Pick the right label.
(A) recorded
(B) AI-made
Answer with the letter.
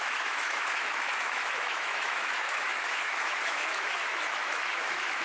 B